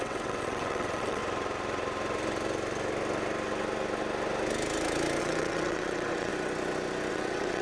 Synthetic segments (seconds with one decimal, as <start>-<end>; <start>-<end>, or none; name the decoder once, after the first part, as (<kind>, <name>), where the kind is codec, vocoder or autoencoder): 0.0-1.2 (vocoder, WaveNeXt); 5.2-6.3; 7.1-7.6